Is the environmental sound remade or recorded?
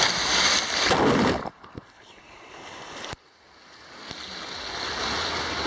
recorded